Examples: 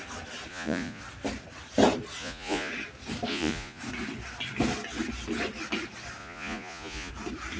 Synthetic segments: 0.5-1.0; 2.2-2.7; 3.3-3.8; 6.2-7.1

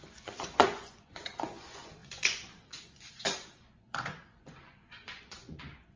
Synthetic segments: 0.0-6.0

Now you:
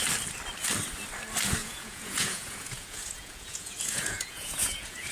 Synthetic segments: 1.6-5.1